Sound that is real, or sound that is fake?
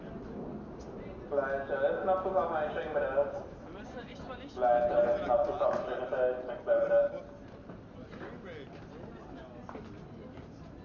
real